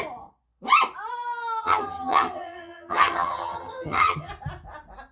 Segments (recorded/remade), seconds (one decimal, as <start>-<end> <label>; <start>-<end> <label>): 0.0-1.6 recorded; 1.6-4.3 remade; 4.3-5.1 recorded